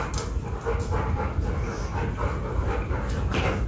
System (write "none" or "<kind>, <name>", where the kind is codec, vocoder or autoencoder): none